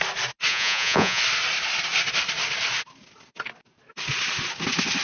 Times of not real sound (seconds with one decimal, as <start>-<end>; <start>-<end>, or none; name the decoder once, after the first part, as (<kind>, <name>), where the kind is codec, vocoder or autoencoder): 0.5-1.2 (vocoder, Vocos)